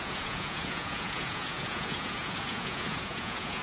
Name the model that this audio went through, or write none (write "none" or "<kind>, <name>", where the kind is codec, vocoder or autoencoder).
vocoder, Vocos